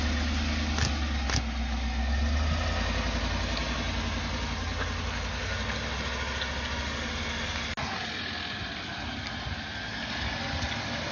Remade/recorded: recorded